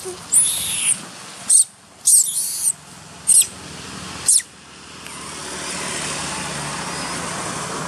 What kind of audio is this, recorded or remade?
recorded